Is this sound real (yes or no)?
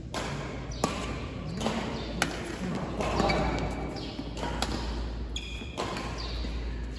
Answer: yes